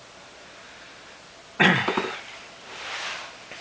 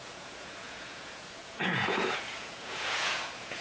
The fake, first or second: second